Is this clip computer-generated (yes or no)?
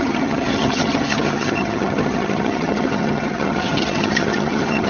yes